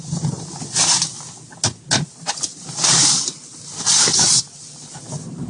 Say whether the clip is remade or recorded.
recorded